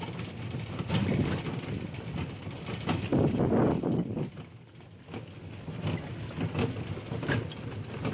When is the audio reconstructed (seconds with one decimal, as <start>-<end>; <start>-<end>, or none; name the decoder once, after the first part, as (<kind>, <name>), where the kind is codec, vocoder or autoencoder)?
none